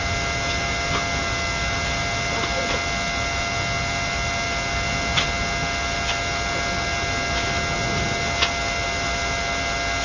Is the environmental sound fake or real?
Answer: real